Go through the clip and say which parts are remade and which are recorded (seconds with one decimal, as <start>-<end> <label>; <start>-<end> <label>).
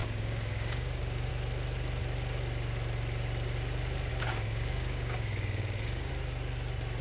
0.0-1.3 remade; 1.3-4.1 recorded; 4.1-6.1 remade; 6.1-7.0 recorded